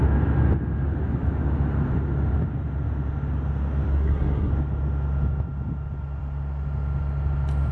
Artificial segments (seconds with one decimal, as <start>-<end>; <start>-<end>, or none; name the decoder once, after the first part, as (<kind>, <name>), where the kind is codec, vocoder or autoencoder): 3.9-4.5 (codec, SNAC)